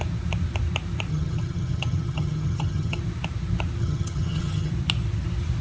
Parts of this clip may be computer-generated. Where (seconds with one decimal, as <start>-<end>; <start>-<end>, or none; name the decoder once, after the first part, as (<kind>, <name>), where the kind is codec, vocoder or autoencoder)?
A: 1.1-3.0 (vocoder, HiFi-GAN); 3.8-4.7